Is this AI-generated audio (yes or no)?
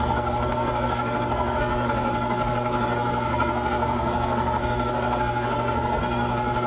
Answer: yes